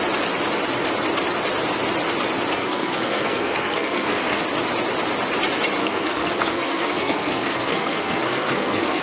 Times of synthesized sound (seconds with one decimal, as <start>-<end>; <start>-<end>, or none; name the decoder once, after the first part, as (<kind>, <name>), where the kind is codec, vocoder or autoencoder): 2.5-4.4 (codec, SNAC); 5.8-9.0